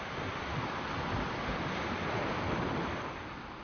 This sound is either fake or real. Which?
real